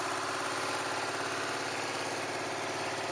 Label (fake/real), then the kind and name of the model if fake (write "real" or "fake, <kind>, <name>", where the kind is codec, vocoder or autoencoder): real